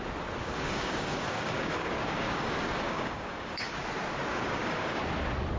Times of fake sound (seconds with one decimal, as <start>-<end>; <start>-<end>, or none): 0.4-3.8; 4.3-5.0